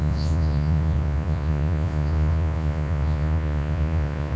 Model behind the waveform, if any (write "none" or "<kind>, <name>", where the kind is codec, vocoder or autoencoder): vocoder, Vocos